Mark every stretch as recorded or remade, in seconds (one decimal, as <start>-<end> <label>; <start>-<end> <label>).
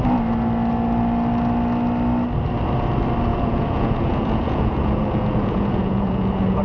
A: 0.0-3.3 recorded; 3.3-6.6 remade